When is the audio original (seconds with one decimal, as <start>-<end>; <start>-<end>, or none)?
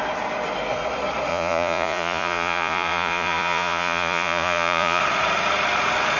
0.0-1.3; 5.0-6.2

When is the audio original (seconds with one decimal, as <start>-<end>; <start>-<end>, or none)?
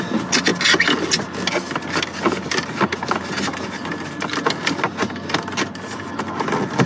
0.0-6.9